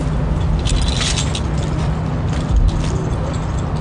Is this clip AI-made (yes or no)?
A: no